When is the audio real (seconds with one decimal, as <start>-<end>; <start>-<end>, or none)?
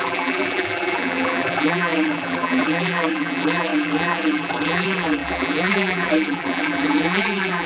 none